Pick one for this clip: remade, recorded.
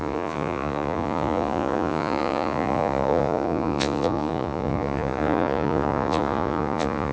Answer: remade